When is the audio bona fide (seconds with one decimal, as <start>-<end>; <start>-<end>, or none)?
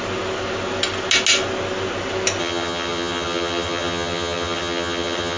0.0-2.4